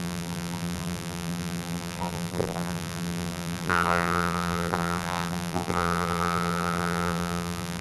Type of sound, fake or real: fake